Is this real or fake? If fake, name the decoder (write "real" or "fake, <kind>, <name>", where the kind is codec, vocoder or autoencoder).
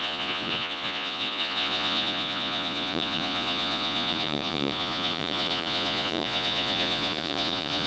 fake, vocoder, Vocos